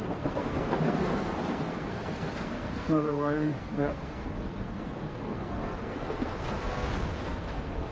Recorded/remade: remade